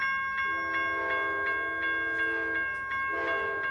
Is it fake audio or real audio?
real